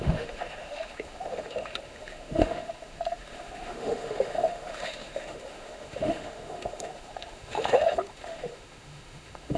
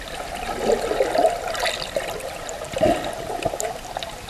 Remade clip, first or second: first